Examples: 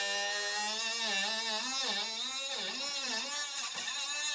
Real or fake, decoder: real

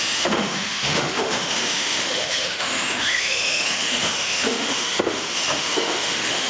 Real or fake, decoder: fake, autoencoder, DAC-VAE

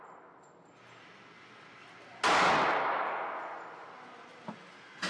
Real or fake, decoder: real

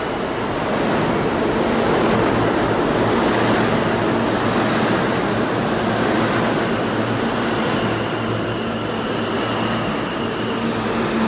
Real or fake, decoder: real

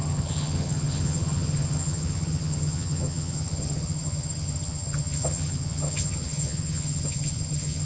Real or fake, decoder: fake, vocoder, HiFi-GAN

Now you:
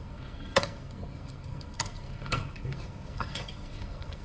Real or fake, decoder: fake, codec, SNAC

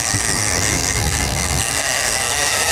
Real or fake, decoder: fake, codec, SNAC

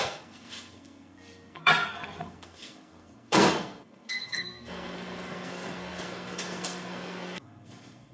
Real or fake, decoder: fake, codec, SNAC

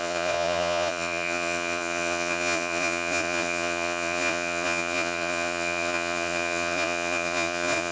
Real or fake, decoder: fake, vocoder, Vocos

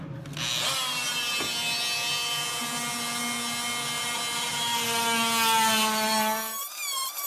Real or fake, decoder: real